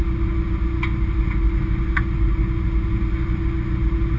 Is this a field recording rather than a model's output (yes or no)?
yes